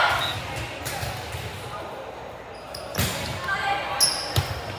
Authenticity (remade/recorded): recorded